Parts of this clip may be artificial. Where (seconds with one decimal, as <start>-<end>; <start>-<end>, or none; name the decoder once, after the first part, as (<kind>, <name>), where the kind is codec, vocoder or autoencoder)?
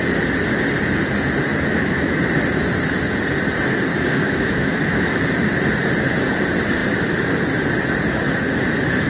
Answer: 1.5-2.2 (autoencoder, DAC-VAE); 3.9-5.2